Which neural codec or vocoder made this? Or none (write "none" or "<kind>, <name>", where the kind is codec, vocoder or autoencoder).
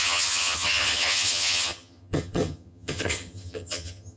vocoder, HiFi-GAN